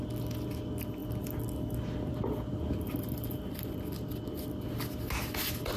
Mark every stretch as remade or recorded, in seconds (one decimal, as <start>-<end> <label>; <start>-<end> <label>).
0.0-5.8 recorded